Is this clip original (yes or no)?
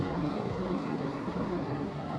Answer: no